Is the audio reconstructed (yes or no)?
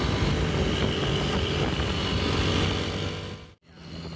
no